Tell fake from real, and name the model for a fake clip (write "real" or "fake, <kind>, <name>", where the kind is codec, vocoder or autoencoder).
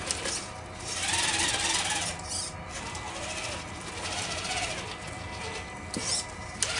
real